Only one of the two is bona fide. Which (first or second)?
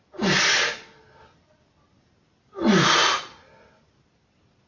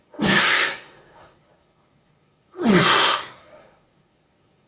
first